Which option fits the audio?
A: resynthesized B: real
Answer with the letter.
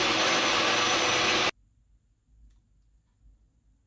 B